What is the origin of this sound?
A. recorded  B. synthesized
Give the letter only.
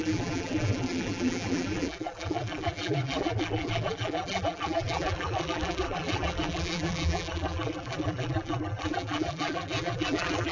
B